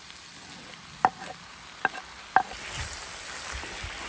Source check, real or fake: real